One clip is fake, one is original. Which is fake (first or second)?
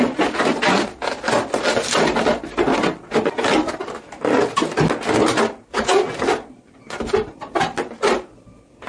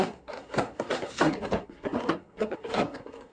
second